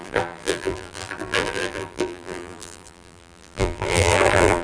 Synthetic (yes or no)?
yes